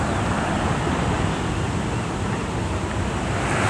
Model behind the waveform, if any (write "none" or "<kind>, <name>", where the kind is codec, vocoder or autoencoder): none